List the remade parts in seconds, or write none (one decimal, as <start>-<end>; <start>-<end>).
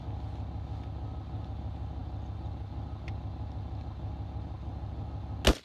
none